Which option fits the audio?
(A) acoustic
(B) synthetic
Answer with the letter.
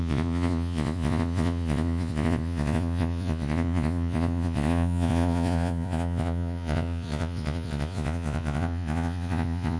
B